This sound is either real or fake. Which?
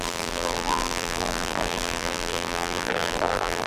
fake